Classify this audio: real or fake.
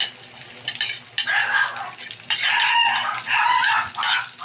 real